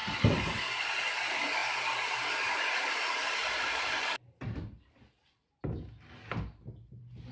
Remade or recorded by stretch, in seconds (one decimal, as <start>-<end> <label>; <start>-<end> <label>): 0.0-1.6 recorded; 1.6-5.5 remade; 5.5-7.3 recorded